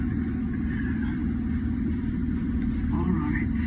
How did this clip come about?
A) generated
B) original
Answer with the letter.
A